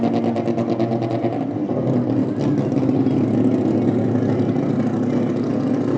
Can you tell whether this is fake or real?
real